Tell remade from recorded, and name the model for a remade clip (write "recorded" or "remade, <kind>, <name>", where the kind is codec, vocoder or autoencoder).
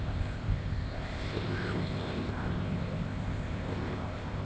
remade, codec, ZipCodec